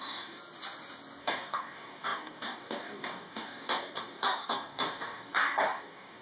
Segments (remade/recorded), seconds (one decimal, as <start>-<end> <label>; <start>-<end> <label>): 0.0-0.4 remade; 0.4-1.2 recorded; 1.2-6.2 remade